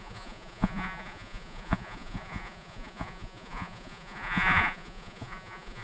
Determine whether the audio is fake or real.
fake